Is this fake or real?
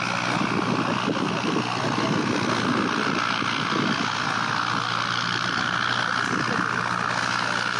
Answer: real